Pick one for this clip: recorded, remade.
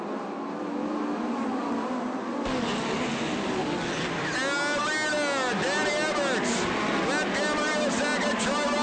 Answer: recorded